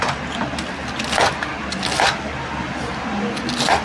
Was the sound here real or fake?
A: real